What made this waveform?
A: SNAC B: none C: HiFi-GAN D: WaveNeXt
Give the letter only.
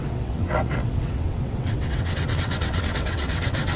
D